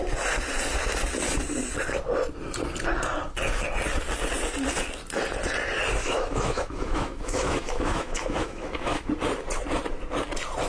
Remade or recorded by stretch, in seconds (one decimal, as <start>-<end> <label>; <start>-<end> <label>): 0.0-6.0 recorded; 6.0-9.1 remade; 9.1-10.7 recorded